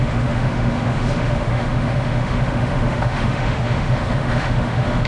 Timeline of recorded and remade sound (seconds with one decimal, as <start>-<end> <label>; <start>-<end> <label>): 0.0-5.1 remade